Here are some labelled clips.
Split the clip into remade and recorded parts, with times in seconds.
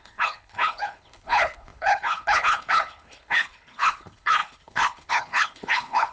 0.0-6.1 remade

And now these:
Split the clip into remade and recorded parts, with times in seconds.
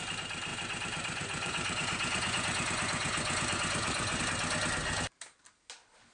0.0-0.5 recorded; 0.5-4.2 remade; 4.2-6.1 recorded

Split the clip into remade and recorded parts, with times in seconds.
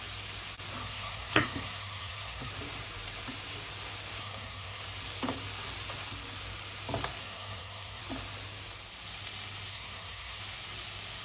0.0-0.8 recorded; 0.8-2.5 remade; 2.5-4.2 recorded; 4.2-4.8 remade; 4.8-7.2 recorded; 7.2-8.0 remade; 8.0-9.7 recorded; 9.7-10.4 remade; 10.4-11.2 recorded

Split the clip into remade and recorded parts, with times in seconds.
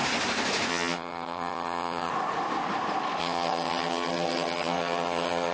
0.0-0.7 recorded; 0.7-2.1 remade; 2.1-3.2 recorded; 3.2-5.5 remade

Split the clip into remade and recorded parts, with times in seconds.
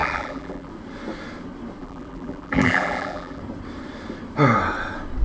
0.0-0.7 remade; 0.7-1.8 recorded; 1.8-3.4 remade; 3.4-5.2 recorded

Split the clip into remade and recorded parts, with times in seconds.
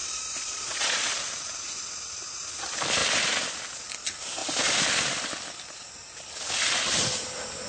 0.0-1.1 remade; 1.1-7.7 recorded